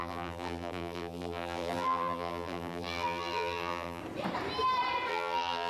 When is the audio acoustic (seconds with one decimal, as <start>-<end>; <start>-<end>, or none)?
4.0-5.1

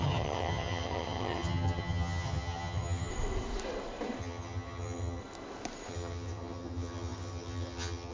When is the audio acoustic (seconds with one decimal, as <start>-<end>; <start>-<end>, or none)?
3.1-4.2; 5.2-5.9

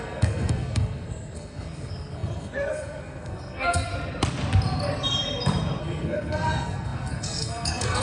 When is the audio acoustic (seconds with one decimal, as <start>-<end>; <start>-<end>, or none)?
3.9-5.8